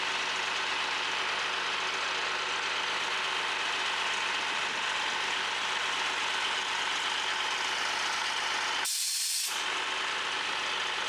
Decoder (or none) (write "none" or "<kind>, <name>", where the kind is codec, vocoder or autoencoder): none